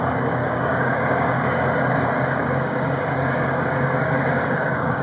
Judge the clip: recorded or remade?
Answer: remade